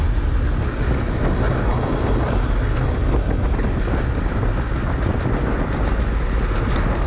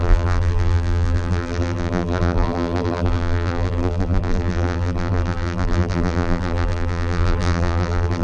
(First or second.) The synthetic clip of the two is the second